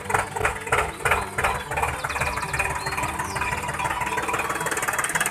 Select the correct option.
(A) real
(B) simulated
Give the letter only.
A